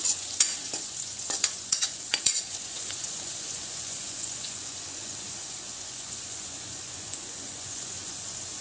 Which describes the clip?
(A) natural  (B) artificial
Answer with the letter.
B